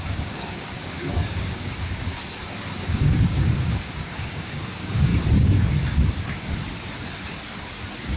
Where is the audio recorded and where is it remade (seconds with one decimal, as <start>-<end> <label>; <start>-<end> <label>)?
0.0-2.2 remade; 2.2-2.8 recorded; 2.8-5.1 remade; 5.1-8.2 recorded